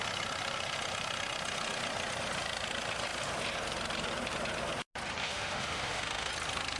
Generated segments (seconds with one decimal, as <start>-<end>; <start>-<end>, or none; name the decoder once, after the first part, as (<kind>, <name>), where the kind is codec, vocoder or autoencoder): 5.2-6.3 (autoencoder, DAC-VAE)